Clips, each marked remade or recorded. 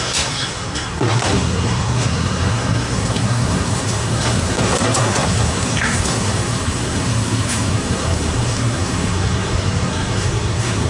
remade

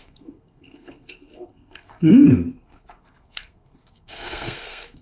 remade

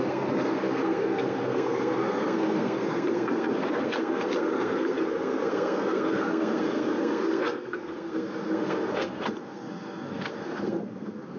remade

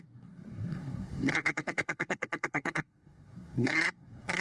remade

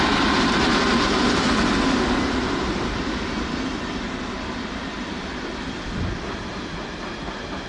recorded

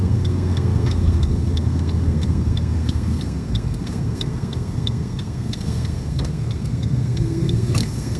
remade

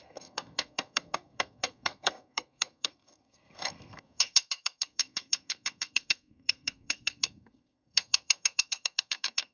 remade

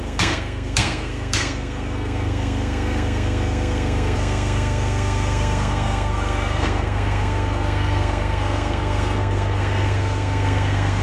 remade